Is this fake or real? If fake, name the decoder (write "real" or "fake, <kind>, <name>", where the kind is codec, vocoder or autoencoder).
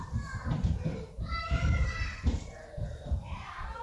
fake, vocoder, BigVGAN v2